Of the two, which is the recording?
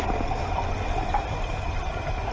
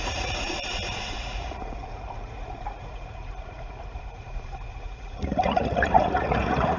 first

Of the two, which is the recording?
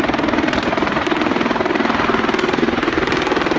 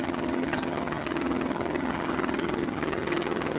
first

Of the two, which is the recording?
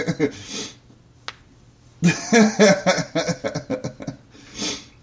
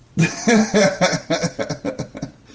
first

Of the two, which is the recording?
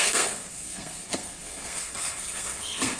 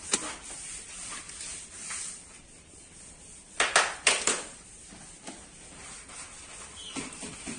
second